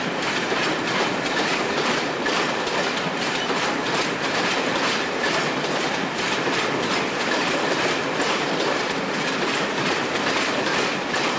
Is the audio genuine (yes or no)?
no